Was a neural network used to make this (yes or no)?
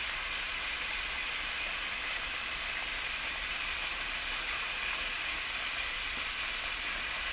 no